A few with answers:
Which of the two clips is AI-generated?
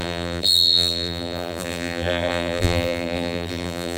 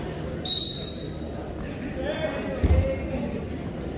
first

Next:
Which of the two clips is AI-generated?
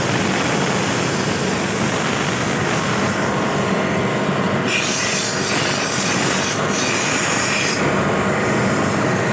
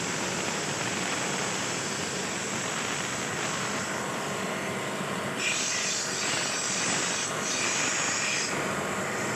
second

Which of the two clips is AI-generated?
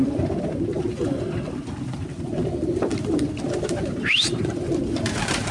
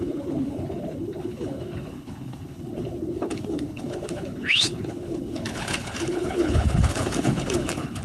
second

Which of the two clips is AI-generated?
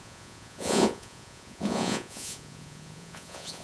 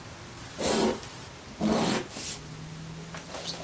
first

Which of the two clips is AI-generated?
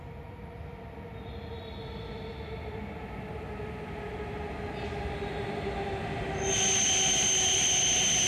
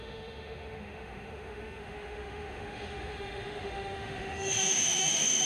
second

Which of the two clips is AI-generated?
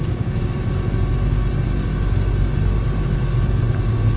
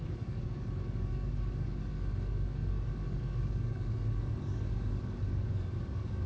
second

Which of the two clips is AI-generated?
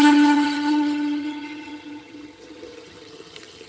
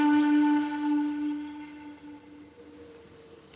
first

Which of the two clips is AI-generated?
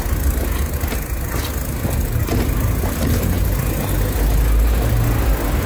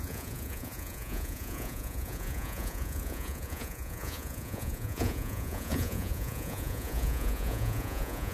second